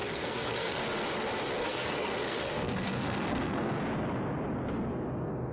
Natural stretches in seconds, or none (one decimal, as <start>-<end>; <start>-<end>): 0.8-1.6; 3.8-5.5